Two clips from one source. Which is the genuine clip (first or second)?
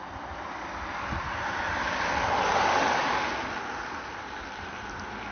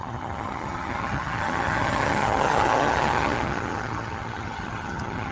first